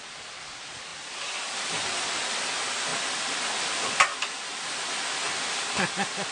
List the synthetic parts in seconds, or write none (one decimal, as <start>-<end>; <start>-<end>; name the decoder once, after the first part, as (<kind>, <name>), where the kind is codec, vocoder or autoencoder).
0.9-2.2 (vocoder, BigVGAN v2); 2.9-4.9